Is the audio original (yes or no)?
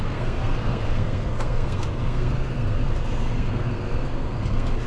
no